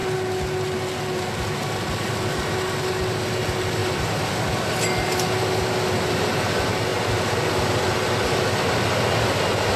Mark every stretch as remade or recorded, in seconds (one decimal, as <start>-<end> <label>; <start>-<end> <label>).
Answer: 0.0-9.8 recorded